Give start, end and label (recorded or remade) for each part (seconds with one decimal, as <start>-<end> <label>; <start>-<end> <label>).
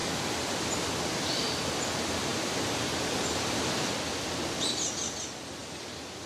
0.0-1.3 remade; 1.3-5.6 recorded; 5.6-6.3 remade